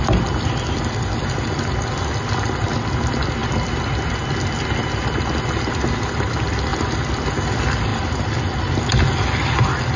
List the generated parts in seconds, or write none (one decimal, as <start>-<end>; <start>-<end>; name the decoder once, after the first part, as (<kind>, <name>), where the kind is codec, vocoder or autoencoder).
none